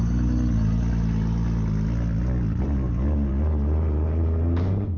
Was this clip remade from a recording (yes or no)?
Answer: no